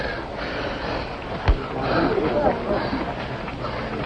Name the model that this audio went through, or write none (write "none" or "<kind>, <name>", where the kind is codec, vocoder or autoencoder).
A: none